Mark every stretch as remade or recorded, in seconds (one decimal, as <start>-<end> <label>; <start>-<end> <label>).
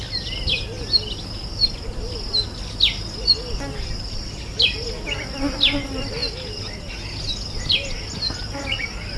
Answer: 0.0-9.2 recorded